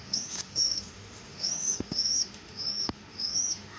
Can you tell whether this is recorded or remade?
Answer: remade